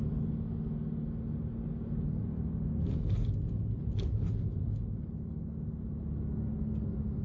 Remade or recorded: recorded